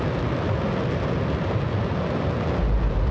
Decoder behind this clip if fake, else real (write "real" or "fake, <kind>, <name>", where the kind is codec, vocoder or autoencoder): real